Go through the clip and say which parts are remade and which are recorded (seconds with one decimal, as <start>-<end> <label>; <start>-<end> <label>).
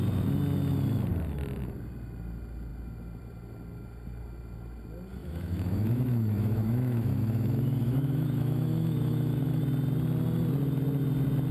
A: 0.0-5.2 recorded; 5.2-9.6 remade; 9.6-11.5 recorded